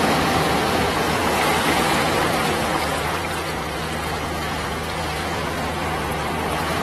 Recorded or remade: remade